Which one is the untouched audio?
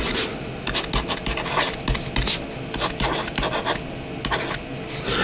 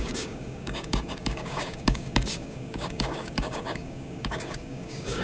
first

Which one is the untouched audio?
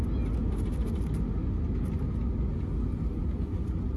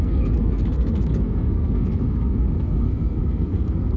first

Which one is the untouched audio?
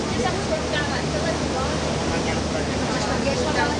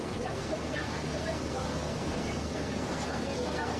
first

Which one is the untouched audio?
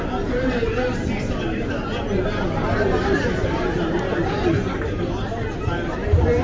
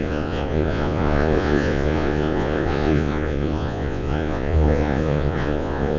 first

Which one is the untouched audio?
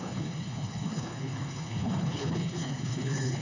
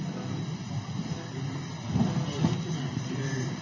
second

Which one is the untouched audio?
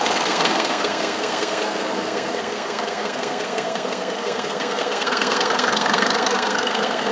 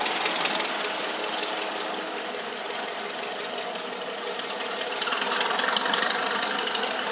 second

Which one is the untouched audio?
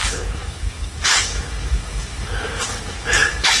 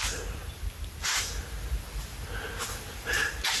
second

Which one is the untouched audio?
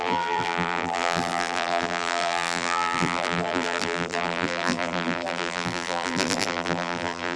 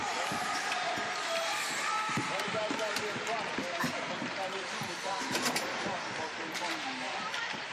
second